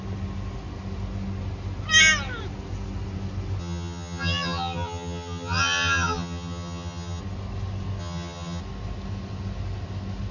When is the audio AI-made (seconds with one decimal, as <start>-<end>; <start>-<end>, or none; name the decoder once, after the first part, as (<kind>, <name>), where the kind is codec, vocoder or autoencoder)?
3.6-7.2 (vocoder, HiFi-GAN); 8.0-8.6